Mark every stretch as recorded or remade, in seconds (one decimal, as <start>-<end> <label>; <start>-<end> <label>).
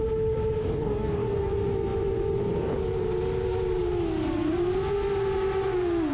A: 0.0-0.6 recorded; 0.6-1.5 remade; 1.5-6.1 recorded